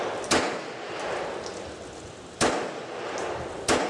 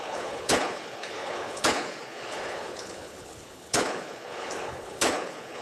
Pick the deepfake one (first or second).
second